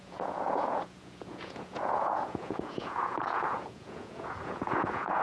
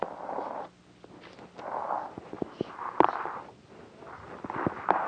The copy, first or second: first